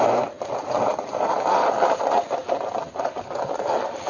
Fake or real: real